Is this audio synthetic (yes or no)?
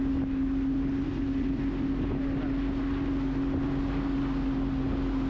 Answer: no